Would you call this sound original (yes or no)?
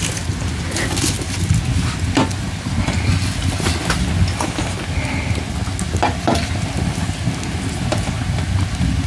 yes